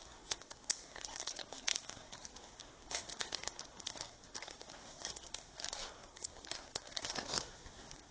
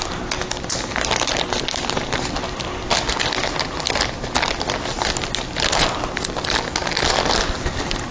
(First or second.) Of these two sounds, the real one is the second